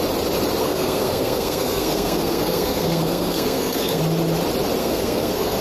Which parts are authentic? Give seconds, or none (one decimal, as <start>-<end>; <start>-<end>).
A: 0.0-0.6; 4.0-4.8

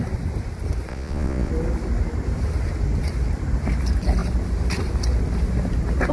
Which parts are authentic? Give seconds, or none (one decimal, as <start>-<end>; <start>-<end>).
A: 0.0-0.9; 1.5-6.1